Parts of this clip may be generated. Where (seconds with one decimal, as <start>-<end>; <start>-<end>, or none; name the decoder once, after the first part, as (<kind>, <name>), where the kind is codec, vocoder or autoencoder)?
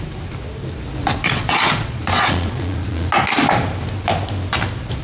1.0-3.1 (vocoder, Vocos)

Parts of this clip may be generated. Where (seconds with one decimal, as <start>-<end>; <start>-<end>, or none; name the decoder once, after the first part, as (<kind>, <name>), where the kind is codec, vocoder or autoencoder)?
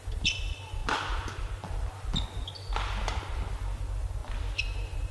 none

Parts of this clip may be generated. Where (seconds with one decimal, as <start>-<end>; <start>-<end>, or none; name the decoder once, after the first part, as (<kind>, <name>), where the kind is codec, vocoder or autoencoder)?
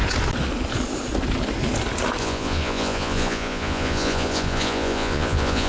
2.2-5.7 (vocoder, Vocos)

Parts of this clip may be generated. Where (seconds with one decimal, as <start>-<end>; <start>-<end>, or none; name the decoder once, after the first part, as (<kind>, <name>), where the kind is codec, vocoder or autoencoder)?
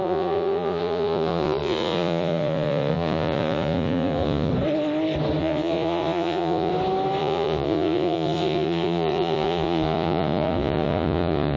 0.0-4.5 (vocoder, Vocos); 5.4-6.7; 7.2-11.6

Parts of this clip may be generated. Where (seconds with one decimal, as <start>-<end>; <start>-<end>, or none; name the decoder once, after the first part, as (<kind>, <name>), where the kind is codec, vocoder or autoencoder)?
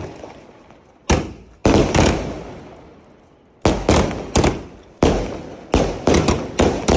none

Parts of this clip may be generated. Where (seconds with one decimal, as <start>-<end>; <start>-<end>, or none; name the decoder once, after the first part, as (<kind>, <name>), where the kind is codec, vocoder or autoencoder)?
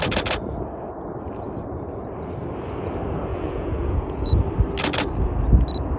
3.3-4.3 (vocoder, Vocos)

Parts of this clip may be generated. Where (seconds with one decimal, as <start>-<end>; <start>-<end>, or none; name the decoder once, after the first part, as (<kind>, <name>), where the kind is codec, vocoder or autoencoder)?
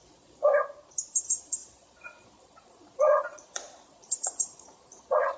0.0-0.5 (vocoder, Vocos); 1.2-5.4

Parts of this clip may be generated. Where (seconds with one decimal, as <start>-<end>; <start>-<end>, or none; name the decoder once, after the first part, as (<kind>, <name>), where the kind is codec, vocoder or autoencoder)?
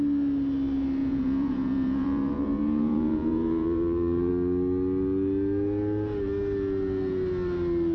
1.0-4.3 (vocoder, Vocos)